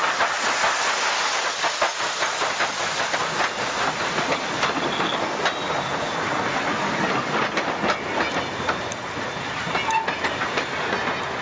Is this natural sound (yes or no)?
yes